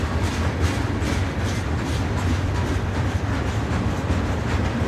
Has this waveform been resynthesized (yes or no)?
no